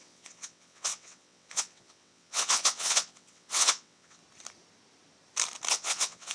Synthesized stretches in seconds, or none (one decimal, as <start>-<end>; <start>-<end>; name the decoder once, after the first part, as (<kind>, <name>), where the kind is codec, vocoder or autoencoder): 0.0-4.2 (vocoder, WaveNeXt); 5.7-6.3

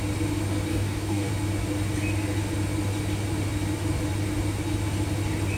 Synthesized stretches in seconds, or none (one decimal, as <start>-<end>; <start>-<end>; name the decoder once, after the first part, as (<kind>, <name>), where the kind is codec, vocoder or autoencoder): 0.7-1.3 (codec, DAC)

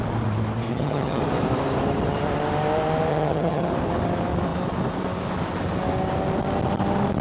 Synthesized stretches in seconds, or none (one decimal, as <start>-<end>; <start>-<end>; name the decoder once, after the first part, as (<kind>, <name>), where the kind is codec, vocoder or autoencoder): 0.7-1.2 (vocoder, HiFi-GAN); 3.1-3.7

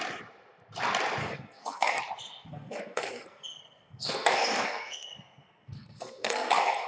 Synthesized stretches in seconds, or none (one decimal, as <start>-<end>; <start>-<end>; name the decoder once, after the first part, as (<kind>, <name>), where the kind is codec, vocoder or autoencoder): 1.2-2.0 (codec, SNAC); 2.5-6.9

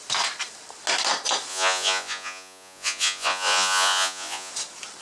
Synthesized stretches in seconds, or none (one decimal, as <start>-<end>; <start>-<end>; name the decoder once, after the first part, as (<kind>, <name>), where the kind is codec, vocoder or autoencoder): 1.5-4.5 (vocoder, Vocos)

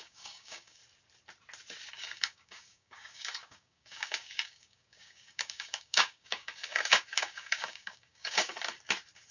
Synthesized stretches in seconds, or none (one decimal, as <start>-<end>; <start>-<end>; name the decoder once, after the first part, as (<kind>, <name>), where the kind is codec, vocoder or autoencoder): 0.0-0.8 (codec, DAC); 1.9-8.5